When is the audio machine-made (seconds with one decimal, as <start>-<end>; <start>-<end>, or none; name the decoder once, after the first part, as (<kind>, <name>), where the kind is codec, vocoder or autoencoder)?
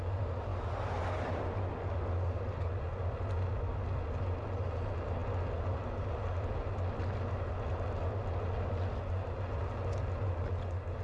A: none